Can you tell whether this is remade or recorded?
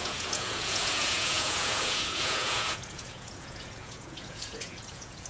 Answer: remade